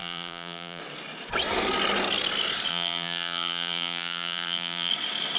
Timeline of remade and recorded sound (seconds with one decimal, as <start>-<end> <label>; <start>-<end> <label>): 0.0-0.8 remade; 0.8-2.7 recorded; 2.7-4.9 remade; 4.9-5.4 recorded